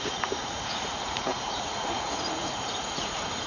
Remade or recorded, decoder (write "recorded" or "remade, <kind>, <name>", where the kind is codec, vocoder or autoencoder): remade, vocoder, Vocos